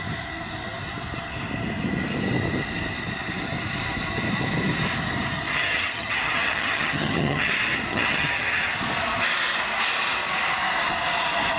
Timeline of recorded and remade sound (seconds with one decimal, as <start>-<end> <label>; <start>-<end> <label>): 0.0-5.5 recorded; 5.5-7.5 remade; 7.5-7.9 recorded; 7.9-8.7 remade; 8.7-11.6 recorded